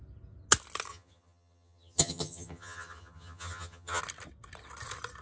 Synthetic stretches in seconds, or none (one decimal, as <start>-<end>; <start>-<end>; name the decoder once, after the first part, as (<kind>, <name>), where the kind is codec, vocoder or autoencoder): 0.9-4.0 (vocoder, HiFi-GAN)